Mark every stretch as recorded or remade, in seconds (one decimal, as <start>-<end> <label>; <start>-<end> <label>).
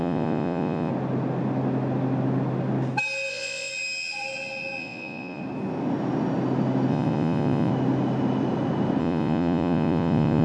0.0-0.9 remade; 0.9-3.3 recorded; 3.3-3.7 remade; 3.7-4.8 recorded; 4.8-5.4 remade; 5.4-6.9 recorded; 6.9-7.7 remade; 7.7-9.0 recorded; 9.0-10.4 remade